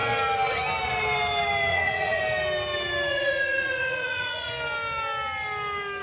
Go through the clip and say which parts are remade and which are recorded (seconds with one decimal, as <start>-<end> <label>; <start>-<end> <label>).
0.0-1.7 recorded; 1.7-2.2 remade; 2.2-3.1 recorded; 3.1-4.5 remade; 4.5-6.0 recorded